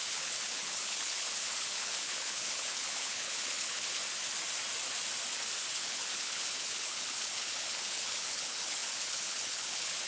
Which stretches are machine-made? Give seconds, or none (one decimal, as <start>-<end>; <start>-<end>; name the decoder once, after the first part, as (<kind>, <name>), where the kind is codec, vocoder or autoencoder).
0.0-4.0 (codec, HILCodec); 5.7-10.1